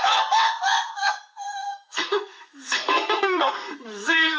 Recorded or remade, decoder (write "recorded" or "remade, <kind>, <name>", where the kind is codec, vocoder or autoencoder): remade, codec, SNAC